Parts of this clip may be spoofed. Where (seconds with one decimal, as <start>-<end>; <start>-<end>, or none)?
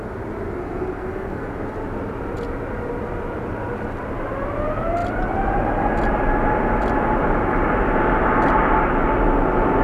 0.6-1.5